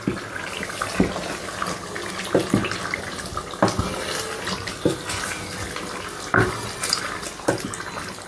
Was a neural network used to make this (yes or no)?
no